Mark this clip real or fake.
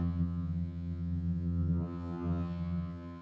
fake